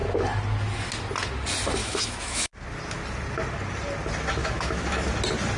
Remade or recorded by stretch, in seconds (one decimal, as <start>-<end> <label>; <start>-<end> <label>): 0.0-1.8 recorded; 1.8-2.5 remade; 2.5-4.4 recorded; 4.4-5.1 remade; 5.1-5.6 recorded